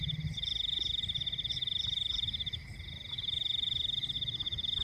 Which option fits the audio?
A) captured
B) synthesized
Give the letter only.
A